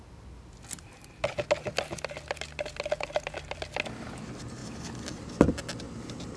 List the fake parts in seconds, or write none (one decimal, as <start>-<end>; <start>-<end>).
none